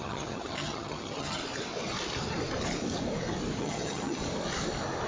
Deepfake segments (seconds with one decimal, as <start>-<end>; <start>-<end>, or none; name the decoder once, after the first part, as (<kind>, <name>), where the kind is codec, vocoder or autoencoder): 0.0-1.4 (vocoder, HiFi-GAN); 3.6-4.2